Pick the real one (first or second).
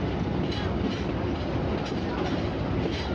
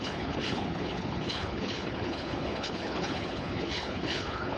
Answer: first